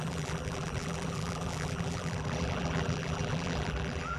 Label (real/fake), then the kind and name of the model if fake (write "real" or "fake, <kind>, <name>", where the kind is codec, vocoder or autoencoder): fake, vocoder, BigVGAN v2